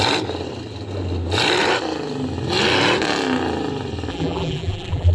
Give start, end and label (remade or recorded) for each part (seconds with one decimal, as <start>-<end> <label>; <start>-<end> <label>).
0.0-4.1 recorded; 4.1-5.1 remade